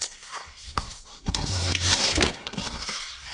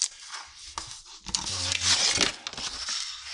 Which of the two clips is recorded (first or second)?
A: second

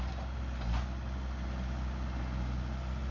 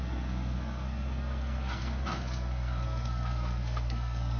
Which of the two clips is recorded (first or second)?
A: first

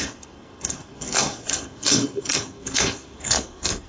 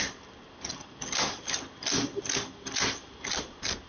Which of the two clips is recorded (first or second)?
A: second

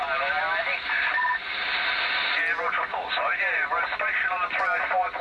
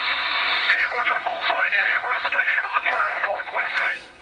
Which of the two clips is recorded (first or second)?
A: first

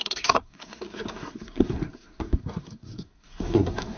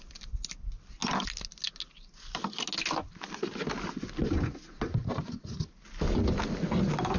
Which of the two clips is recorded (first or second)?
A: second